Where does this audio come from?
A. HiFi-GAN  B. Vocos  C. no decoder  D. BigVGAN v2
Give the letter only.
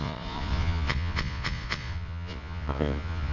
B